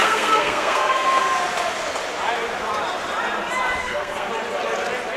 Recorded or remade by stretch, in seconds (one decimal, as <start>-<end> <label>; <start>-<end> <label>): 0.0-1.2 remade; 1.2-3.8 recorded; 3.8-4.3 remade; 4.3-5.2 recorded